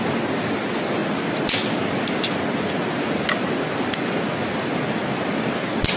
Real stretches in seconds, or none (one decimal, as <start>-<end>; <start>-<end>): 0.0-6.0